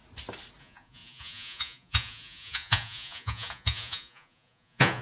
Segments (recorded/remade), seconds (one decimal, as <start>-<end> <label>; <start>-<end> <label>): 0.0-0.6 recorded; 0.6-5.0 remade